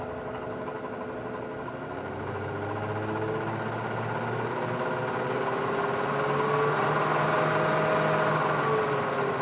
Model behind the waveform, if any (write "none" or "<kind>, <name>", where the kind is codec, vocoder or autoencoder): none